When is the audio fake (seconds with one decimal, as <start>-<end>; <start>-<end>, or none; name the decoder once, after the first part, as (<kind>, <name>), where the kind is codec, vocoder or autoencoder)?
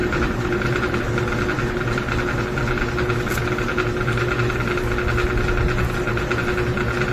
0.0-1.0 (vocoder, BigVGAN v2)